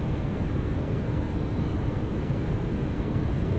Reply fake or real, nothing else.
fake